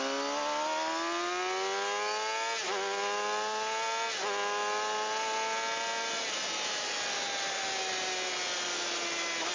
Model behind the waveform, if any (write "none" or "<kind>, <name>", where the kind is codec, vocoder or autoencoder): none